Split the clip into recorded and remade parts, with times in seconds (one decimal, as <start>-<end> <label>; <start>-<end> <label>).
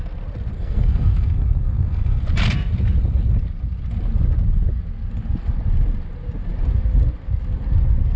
0.0-0.5 recorded; 0.5-2.2 remade; 2.2-8.2 recorded